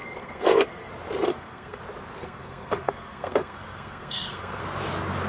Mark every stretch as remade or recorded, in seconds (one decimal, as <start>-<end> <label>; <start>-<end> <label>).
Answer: 0.0-0.9 remade; 0.9-1.3 recorded; 1.3-1.8 remade; 1.8-2.2 recorded; 2.2-4.6 remade; 4.6-5.3 recorded